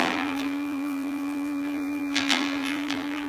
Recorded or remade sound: remade